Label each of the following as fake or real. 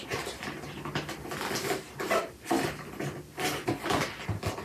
real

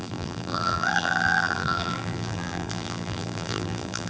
fake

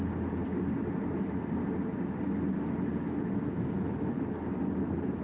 real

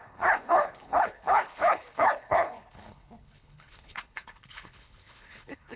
fake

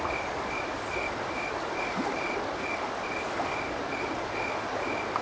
real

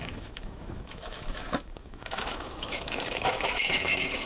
fake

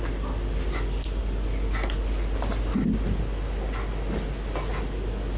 real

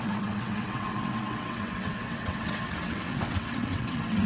fake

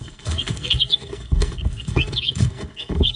fake